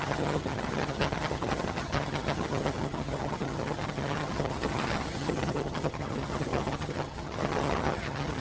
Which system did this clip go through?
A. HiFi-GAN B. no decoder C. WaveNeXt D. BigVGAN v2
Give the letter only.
A